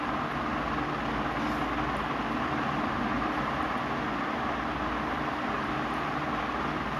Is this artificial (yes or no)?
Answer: no